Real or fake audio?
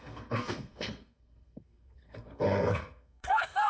fake